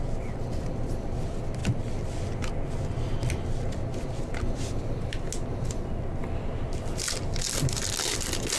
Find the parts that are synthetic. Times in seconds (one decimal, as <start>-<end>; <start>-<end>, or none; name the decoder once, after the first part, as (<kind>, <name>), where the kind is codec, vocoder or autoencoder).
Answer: none